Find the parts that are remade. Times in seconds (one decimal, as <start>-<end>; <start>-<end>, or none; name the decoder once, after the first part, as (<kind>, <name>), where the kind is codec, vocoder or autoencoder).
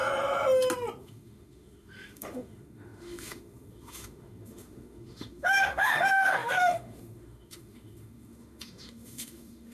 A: 1.0-9.7 (autoencoder, DAC-VAE)